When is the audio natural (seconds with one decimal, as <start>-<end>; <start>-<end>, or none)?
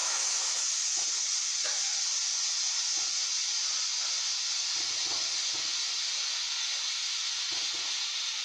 0.7-8.4